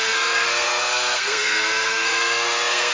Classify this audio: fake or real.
fake